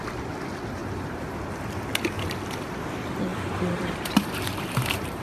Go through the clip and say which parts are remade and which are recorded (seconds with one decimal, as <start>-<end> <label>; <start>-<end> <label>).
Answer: 0.0-0.8 recorded; 0.8-1.3 remade; 1.3-3.3 recorded; 3.3-5.2 remade